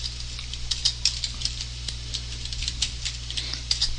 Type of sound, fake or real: real